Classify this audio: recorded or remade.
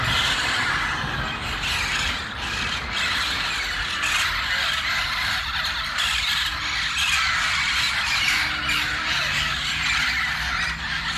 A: recorded